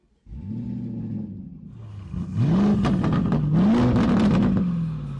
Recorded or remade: recorded